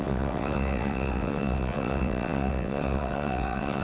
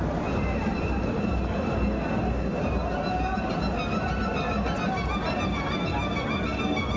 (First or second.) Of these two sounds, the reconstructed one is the first